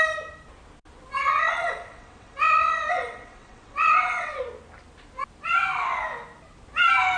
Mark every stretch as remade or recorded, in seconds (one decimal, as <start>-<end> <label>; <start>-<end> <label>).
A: 0.0-1.2 recorded; 1.2-4.4 remade; 4.4-7.2 recorded